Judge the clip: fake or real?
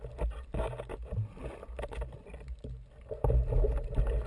real